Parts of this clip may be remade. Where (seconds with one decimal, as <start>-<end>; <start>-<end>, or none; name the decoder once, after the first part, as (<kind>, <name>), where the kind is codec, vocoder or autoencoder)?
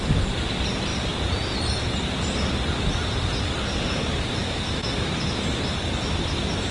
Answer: 4.4-5.1 (autoencoder, DAC-VAE)